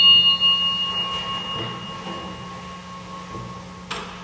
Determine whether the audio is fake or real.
real